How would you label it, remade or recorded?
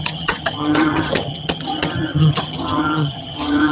remade